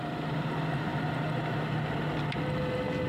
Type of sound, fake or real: real